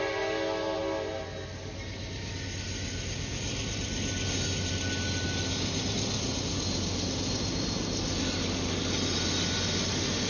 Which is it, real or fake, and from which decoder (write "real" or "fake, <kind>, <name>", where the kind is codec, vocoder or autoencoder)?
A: real